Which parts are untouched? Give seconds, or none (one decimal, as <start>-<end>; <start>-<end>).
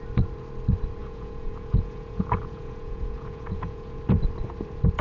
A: 0.0-1.0; 4.0-5.0